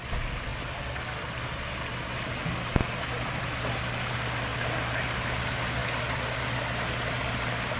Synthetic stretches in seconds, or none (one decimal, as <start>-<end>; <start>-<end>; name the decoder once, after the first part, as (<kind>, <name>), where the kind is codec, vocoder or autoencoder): none